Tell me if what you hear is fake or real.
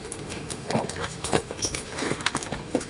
fake